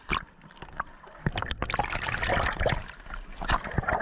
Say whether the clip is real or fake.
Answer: real